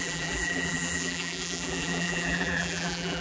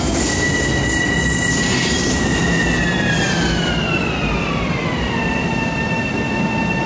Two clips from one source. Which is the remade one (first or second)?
first